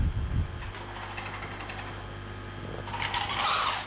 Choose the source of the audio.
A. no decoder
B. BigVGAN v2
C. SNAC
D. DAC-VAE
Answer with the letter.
A